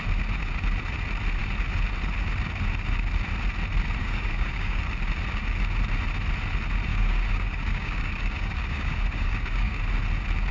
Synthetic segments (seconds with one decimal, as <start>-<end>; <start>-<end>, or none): 4.0-4.8; 6.9-9.8